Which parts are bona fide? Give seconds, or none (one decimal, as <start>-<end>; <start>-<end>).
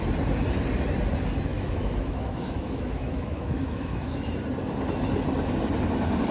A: 0.0-1.5; 4.3-6.3